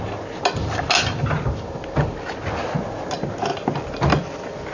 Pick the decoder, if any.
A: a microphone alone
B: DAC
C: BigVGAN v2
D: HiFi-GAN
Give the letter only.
A